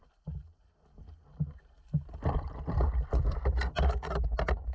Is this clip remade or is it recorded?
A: recorded